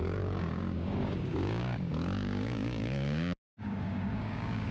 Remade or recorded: remade